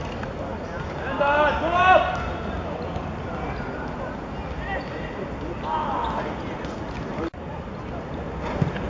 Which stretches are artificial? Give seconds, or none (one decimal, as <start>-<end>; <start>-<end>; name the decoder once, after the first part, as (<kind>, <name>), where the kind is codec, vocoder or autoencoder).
none